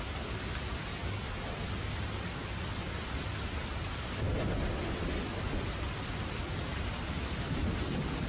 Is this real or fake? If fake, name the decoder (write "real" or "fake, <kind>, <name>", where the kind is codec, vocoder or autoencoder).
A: real